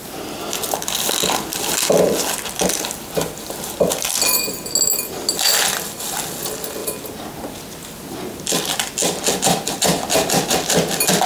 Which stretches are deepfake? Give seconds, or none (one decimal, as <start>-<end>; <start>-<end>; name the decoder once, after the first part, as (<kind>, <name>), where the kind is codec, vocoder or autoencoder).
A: none